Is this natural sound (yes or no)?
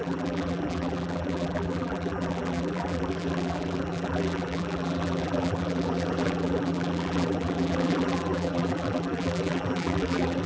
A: no